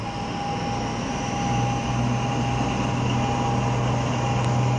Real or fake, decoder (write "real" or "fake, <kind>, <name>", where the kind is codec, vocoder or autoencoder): real